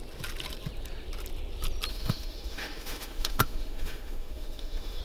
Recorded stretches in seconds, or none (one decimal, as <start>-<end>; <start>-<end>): 0.0-1.9